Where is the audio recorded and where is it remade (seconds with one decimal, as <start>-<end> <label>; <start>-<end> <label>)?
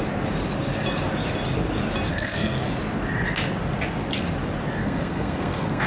0.0-2.1 recorded; 2.1-2.6 remade; 2.6-4.8 recorded; 4.8-5.9 remade